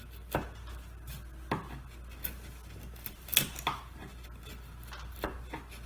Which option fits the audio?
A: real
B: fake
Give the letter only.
A